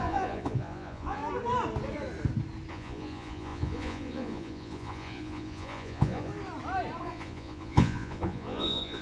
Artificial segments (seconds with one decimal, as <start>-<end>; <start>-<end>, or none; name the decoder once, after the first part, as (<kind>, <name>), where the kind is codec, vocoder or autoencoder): 0.0-1.2 (vocoder, Vocos); 2.7-6.3; 7.0-9.0